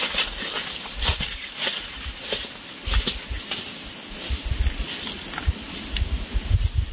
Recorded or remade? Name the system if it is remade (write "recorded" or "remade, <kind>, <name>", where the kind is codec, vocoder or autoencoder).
recorded